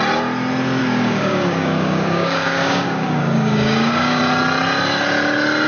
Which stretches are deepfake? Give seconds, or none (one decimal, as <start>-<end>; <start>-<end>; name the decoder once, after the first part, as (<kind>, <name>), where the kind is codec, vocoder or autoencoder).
0.8-4.2 (codec, DAC)